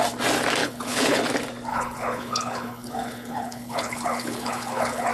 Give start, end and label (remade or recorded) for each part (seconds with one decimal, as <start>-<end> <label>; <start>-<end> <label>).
0.0-0.6 recorded; 0.6-1.2 remade; 1.2-1.7 recorded; 1.7-5.1 remade